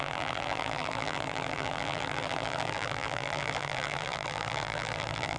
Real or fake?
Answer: fake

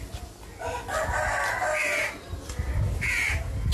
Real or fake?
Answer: real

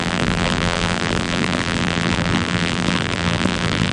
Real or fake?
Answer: fake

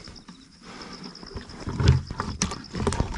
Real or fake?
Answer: real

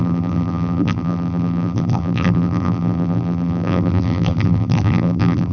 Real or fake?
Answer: fake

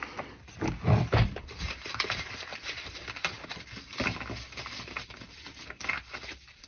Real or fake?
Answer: fake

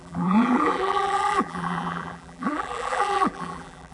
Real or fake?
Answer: fake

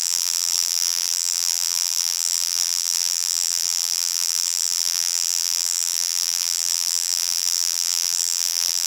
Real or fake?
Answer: fake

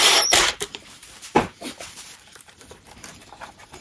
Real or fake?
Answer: fake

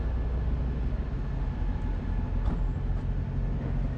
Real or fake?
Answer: real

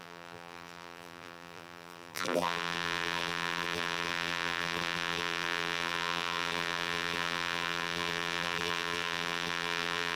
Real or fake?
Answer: fake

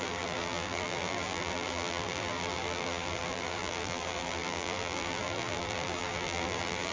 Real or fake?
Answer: fake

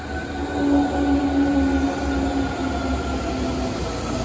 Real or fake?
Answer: real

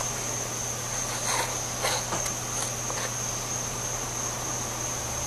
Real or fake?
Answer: real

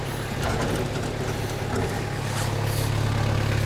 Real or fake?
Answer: real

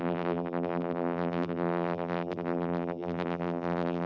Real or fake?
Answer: fake